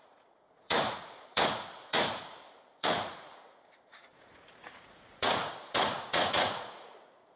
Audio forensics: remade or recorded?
remade